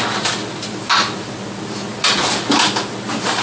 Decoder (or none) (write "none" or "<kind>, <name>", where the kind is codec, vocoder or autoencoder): none